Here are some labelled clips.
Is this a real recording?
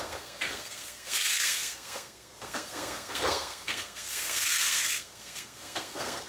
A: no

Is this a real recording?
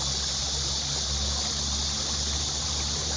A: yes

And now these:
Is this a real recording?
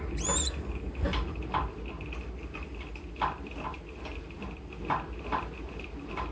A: yes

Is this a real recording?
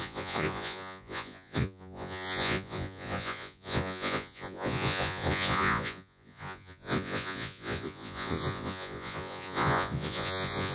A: no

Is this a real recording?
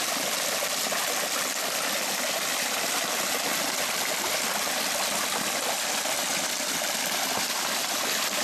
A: yes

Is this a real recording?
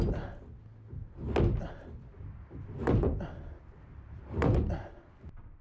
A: yes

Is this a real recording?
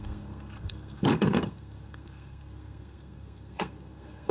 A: no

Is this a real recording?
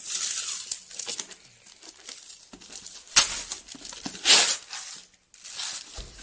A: yes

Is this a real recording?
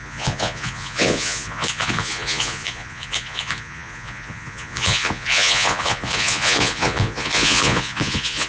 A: no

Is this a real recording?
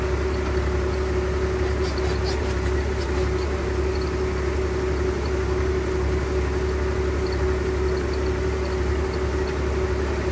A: yes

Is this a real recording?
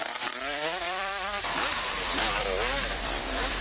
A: no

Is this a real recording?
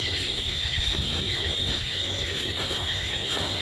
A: no